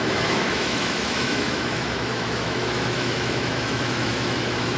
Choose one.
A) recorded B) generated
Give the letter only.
B